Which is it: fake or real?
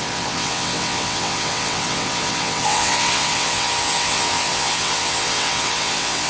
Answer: fake